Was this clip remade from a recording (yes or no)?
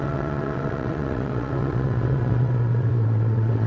yes